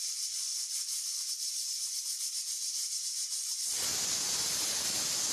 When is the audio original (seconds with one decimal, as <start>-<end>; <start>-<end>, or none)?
0.0-0.5; 3.2-3.7